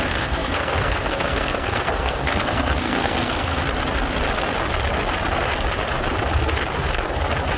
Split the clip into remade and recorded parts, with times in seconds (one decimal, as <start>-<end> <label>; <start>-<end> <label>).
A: 0.0-3.6 remade; 3.6-7.6 recorded